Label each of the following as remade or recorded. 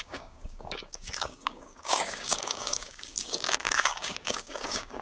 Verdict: remade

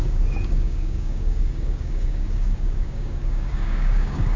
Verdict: remade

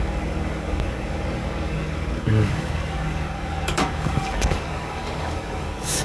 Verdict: remade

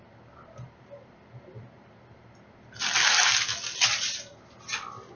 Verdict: recorded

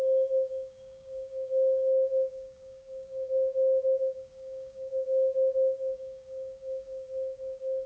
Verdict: remade